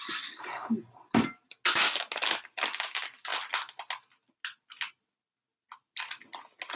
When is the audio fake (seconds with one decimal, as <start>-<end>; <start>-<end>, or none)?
none